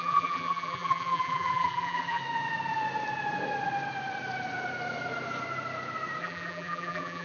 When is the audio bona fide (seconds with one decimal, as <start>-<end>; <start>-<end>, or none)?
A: 2.2-6.2